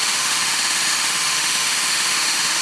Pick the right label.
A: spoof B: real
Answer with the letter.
A